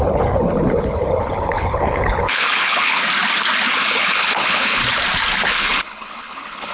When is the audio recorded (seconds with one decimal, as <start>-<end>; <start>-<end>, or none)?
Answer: 3.0-3.7; 4.8-5.5